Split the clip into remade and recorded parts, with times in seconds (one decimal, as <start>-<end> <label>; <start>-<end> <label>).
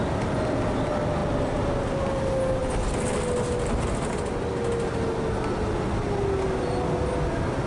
0.0-7.7 recorded